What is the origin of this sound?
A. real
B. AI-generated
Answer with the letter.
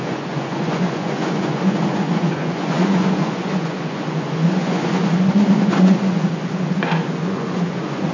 B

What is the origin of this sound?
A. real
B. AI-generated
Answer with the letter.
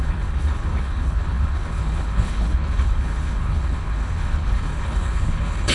B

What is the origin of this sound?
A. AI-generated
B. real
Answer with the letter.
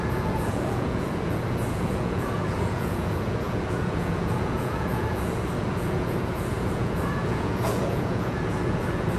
A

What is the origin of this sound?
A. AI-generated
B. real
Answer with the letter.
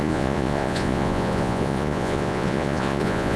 A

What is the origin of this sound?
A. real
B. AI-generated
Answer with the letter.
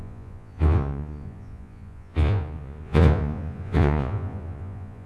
B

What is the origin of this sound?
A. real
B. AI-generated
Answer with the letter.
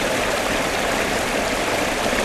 B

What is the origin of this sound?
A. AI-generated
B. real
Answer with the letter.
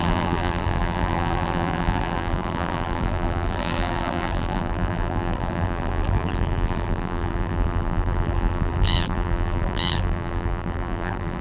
A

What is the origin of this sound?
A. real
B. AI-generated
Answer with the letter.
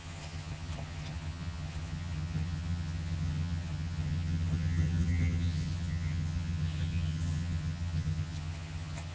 B